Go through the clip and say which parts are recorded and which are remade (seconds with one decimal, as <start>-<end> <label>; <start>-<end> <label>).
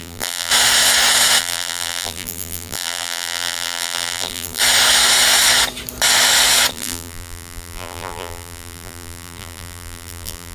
0.0-0.5 remade; 0.5-1.4 recorded; 1.4-4.6 remade; 4.6-6.7 recorded; 6.7-10.5 remade